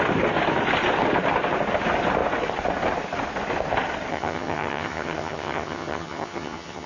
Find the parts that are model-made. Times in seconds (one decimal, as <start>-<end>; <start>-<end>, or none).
4.1-6.9